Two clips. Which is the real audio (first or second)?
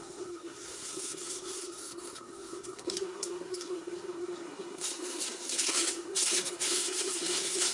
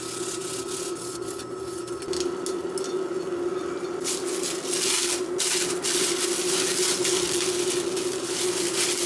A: second